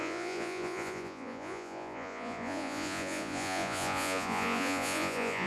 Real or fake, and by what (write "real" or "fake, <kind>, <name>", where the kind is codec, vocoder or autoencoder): fake, vocoder, Vocos